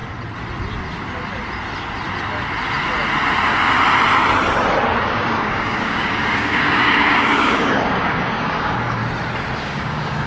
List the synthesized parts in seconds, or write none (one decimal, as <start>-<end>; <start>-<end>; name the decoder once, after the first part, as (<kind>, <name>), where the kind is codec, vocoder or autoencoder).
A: 5.0-9.0 (codec, DAC); 9.6-10.3